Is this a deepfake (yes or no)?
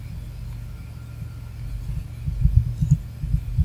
no